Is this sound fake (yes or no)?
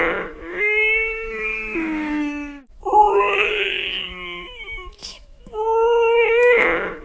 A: yes